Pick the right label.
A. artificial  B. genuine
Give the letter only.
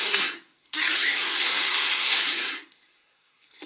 A